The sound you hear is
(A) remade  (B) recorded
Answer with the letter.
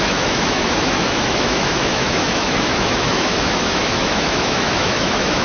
A